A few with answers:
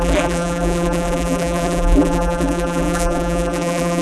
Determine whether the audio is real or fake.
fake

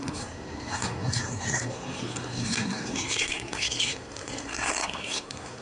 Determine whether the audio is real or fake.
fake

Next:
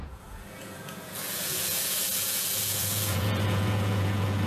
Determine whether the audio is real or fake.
fake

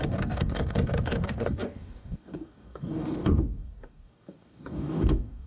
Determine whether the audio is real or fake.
fake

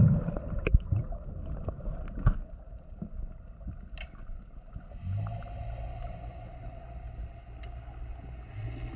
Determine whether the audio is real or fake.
real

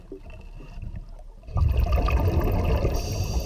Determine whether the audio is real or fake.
real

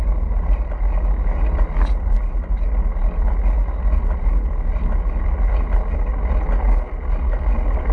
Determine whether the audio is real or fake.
real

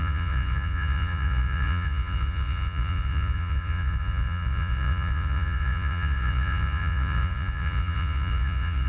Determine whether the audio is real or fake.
fake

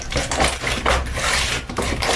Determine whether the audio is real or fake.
fake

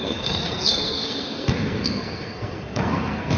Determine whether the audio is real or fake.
fake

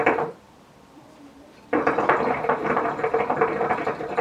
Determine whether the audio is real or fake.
fake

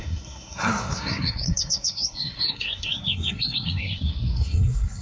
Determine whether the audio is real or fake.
fake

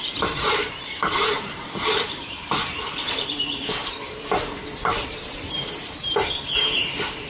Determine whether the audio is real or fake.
fake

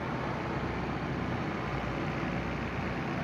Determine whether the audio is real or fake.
real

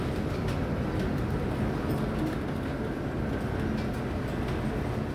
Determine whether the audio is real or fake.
real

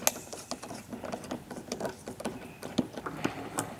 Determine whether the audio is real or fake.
real